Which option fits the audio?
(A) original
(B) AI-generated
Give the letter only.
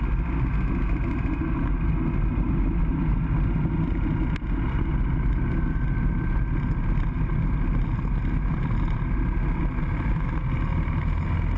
A